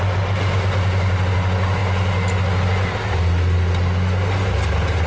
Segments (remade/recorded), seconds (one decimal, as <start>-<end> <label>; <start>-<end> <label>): 0.0-5.1 recorded

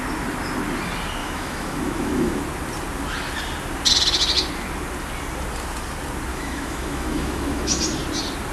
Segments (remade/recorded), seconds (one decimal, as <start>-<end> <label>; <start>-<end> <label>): 0.0-1.2 recorded; 1.2-2.4 remade; 2.4-6.3 recorded; 6.3-7.8 remade; 7.8-8.5 recorded

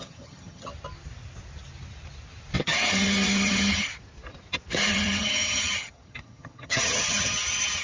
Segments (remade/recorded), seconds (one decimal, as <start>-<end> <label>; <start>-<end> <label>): 0.0-0.7 remade; 0.7-2.6 recorded; 2.6-3.9 remade; 3.9-4.9 recorded; 4.9-7.8 remade

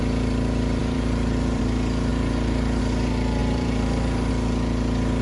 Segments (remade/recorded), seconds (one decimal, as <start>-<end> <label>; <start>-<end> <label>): 0.0-0.8 recorded; 0.8-1.6 remade; 1.6-2.1 recorded; 2.1-2.8 remade; 2.8-3.4 recorded; 3.4-4.3 remade; 4.3-5.2 recorded

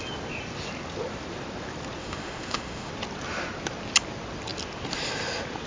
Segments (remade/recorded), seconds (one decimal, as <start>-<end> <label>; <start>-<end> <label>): 0.0-2.0 recorded; 2.0-2.9 remade; 2.9-5.7 recorded

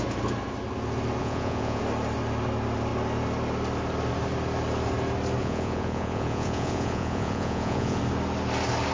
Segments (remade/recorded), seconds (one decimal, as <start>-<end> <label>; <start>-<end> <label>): 0.0-1.2 recorded; 1.2-1.8 remade; 1.8-5.4 recorded; 5.4-8.0 remade; 8.0-8.9 recorded

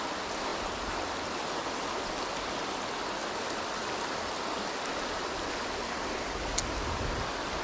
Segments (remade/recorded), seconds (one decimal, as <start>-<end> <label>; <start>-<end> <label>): 0.0-7.6 recorded